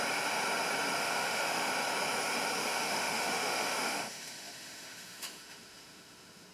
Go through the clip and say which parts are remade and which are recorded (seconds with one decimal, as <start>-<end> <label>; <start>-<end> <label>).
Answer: 0.0-1.0 recorded; 1.0-1.7 remade; 1.7-2.6 recorded; 2.6-6.5 remade